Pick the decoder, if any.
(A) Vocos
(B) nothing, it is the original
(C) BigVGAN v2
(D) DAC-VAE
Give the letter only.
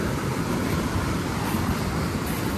B